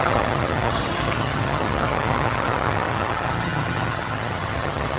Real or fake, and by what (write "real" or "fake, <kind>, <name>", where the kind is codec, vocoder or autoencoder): fake, vocoder, HiFi-GAN